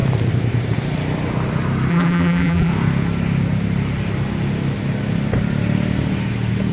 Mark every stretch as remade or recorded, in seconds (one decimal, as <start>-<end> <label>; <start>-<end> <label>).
0.0-1.9 recorded; 1.9-2.7 remade; 2.7-6.7 recorded